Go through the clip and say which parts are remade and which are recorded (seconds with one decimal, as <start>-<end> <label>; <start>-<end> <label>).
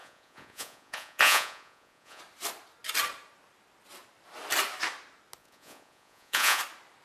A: 0.0-2.2 remade; 2.2-5.4 recorded; 5.4-6.6 remade; 6.6-7.0 recorded